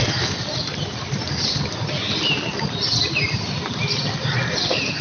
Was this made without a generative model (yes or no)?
yes